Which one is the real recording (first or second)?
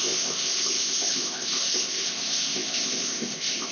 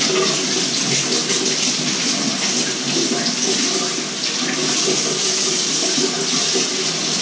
second